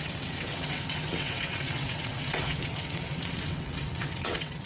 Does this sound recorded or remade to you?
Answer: remade